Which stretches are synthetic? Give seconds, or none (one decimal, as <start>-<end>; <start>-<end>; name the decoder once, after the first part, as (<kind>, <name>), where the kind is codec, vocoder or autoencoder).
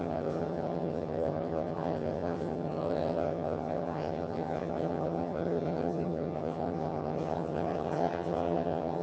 0.0-9.0 (vocoder, HiFi-GAN)